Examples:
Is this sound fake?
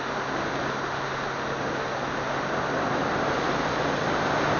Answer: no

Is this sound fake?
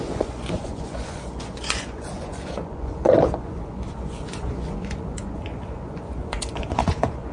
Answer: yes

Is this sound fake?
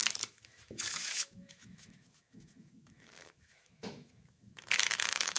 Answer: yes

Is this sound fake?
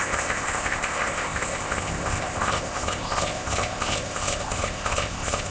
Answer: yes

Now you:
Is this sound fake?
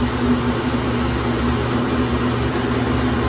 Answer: no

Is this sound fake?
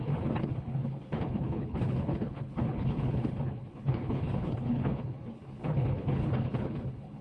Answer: yes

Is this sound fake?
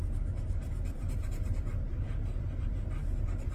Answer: yes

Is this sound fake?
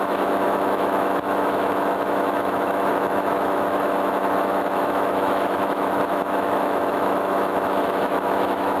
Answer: yes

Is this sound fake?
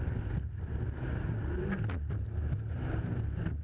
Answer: no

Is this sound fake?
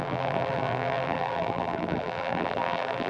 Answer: yes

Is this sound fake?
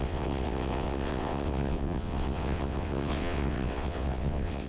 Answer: yes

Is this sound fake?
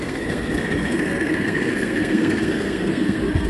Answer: yes